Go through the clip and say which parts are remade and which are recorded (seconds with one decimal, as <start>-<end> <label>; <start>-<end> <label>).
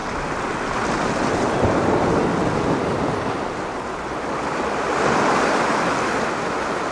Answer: 0.0-6.9 recorded